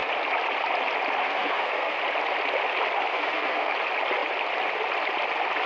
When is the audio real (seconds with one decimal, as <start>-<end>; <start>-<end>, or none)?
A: 0.0-1.2; 2.0-3.1; 3.7-5.7